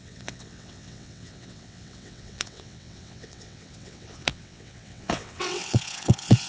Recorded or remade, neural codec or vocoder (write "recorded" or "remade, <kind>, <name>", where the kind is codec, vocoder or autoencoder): remade, vocoder, WaveNeXt